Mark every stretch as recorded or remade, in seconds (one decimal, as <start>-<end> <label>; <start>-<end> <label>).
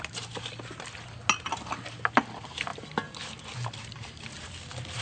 0.0-5.0 recorded